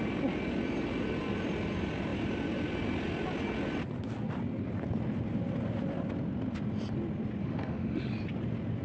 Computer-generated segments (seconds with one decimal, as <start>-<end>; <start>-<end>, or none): 7.4-8.1